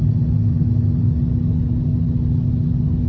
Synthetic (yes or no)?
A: no